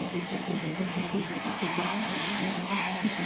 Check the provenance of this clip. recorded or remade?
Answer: remade